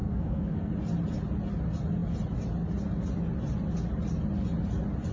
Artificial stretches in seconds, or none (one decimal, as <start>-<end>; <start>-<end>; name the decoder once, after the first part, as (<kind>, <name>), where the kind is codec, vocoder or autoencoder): 0.0-0.7 (codec, SNAC)

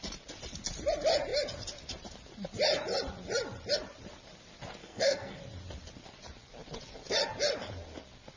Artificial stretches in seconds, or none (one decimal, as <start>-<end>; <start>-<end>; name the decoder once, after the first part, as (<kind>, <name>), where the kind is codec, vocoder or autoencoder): 4.8-5.4 (codec, SNAC)